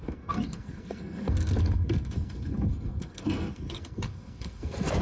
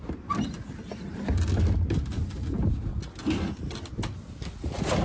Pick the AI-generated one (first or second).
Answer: first